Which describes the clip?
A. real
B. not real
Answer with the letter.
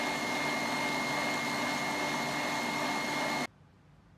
A